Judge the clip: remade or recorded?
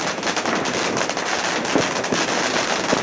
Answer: recorded